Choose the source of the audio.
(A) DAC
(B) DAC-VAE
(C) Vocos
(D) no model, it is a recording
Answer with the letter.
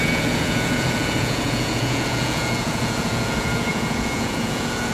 C